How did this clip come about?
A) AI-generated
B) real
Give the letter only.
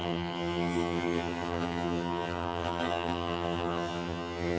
A